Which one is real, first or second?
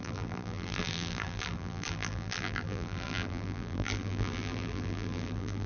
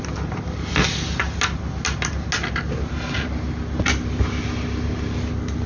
second